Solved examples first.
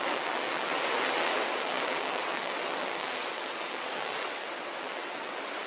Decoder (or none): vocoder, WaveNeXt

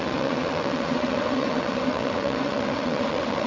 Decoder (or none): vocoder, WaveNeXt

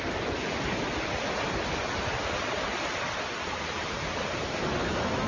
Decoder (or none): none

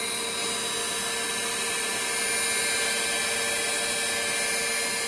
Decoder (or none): none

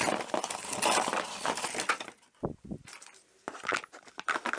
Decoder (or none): none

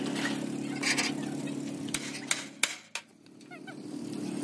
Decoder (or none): none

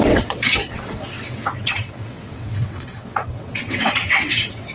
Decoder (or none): vocoder, WaveNeXt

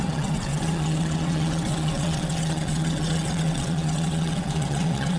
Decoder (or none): vocoder, WaveNeXt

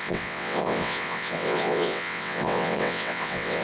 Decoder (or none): vocoder, WaveNeXt